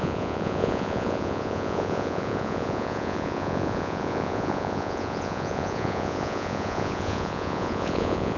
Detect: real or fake fake